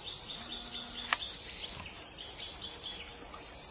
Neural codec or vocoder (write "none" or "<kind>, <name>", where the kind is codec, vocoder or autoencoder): none